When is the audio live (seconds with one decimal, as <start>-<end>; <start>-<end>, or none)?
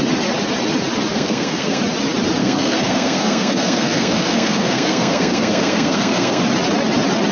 0.0-1.1; 1.8-2.4; 6.4-7.3